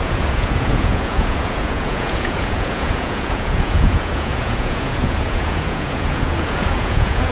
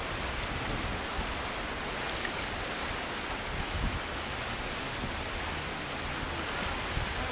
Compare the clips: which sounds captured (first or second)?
second